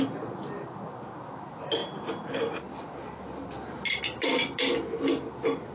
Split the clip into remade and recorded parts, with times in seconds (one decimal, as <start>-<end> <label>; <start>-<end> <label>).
0.0-5.7 recorded